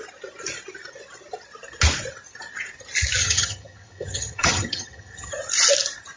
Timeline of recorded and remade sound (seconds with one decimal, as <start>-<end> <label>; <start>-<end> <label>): 0.0-3.2 recorded; 3.2-5.3 remade; 5.3-6.2 recorded